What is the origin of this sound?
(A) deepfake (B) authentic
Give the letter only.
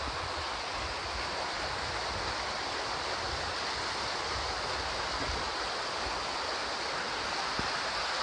B